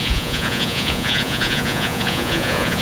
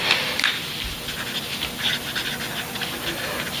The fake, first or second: first